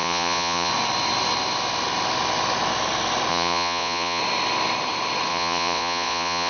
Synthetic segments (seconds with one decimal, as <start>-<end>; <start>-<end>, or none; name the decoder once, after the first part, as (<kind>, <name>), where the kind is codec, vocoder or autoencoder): 0.0-0.7 (vocoder, Vocos); 3.3-4.2; 5.3-6.5